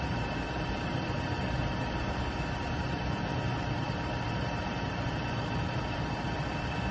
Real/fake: fake